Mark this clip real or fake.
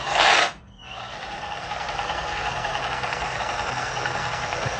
fake